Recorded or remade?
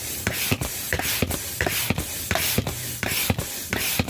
remade